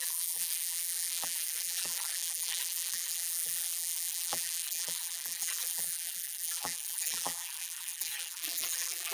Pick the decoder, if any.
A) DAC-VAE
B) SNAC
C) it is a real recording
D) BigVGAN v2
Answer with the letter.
D